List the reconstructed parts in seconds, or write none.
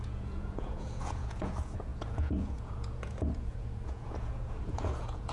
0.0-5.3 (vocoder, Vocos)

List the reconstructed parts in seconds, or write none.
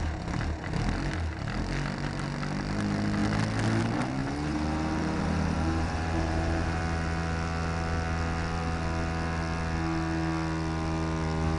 4.2-6.8 (vocoder, BigVGAN v2)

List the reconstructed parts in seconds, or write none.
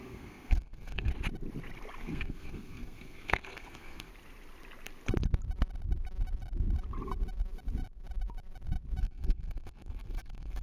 0.0-1.1 (codec, SNAC); 2.0-4.1; 9.0-10.6